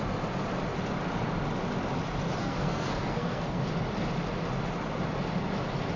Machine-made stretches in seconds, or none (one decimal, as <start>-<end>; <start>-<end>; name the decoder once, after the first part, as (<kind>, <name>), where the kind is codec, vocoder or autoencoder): 2.4-3.6 (codec, SNAC)